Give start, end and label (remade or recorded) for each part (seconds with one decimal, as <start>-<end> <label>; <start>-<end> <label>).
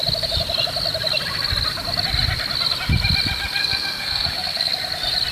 0.0-3.6 recorded; 3.6-4.7 remade; 4.7-5.3 recorded